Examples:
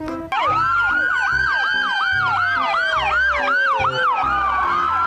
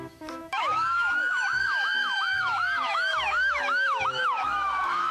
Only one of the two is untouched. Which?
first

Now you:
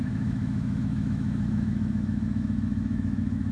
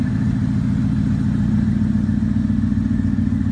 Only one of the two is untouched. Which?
second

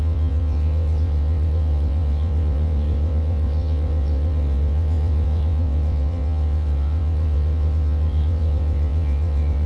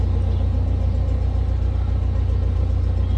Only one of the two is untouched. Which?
second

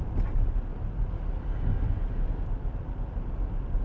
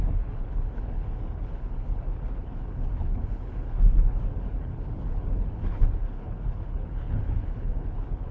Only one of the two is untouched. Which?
first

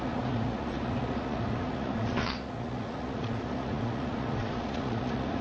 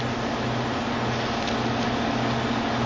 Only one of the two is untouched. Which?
second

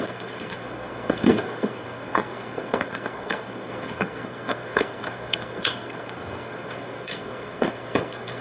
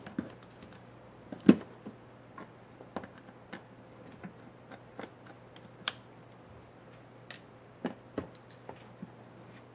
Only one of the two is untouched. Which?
second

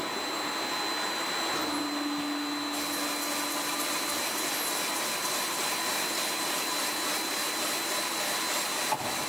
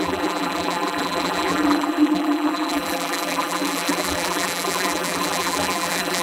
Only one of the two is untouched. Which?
first